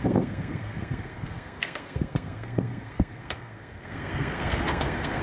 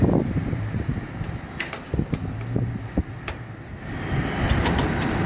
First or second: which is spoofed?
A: first